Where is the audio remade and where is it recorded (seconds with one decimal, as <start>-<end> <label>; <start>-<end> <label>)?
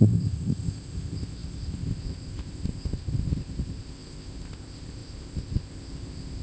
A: 0.0-6.4 remade